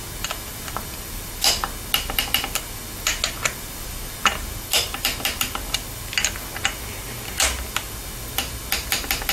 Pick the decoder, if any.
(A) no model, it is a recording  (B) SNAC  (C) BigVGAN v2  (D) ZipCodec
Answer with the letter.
A